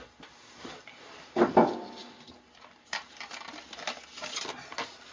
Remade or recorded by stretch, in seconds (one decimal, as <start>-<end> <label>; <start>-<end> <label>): 0.0-5.1 recorded